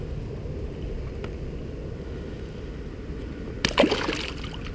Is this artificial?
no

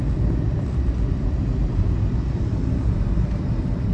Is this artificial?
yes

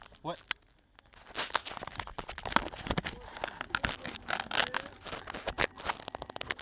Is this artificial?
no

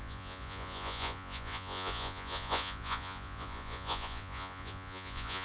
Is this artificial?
yes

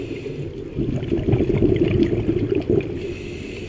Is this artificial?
no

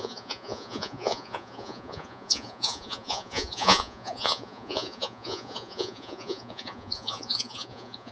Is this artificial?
yes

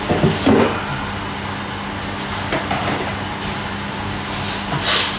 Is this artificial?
no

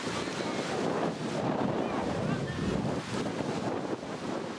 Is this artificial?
no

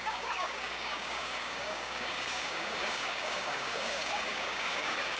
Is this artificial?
yes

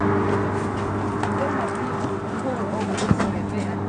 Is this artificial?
no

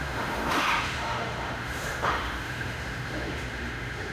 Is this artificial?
yes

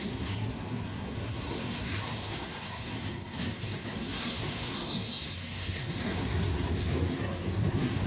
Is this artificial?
yes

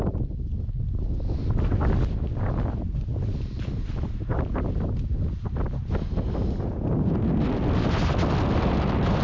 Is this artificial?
no